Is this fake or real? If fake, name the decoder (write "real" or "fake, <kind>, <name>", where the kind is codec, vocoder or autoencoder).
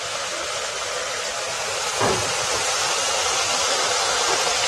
real